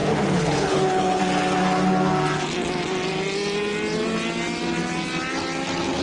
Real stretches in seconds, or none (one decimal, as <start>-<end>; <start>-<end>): 1.2-6.0